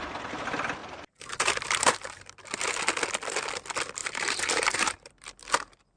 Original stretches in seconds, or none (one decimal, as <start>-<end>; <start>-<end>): 0.0-0.8; 2.4-4.0; 5.1-6.0